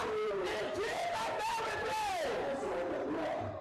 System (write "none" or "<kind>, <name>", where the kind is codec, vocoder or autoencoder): vocoder, BigVGAN v2